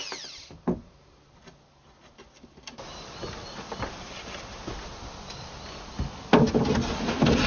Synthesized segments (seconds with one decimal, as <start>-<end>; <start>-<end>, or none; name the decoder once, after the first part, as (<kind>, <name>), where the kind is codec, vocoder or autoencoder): 2.9-4.7 (vocoder, BigVGAN v2)